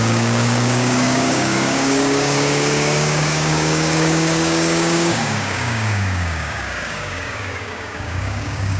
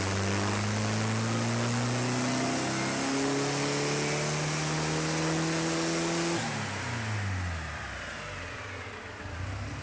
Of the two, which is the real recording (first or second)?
second